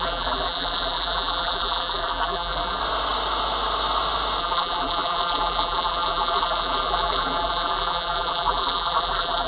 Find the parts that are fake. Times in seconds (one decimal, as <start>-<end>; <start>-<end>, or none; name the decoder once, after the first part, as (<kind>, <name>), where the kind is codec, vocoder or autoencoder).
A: 0.0-2.8 (vocoder, BigVGAN v2); 4.4-9.5